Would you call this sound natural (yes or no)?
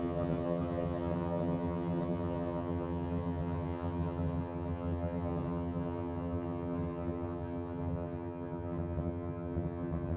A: no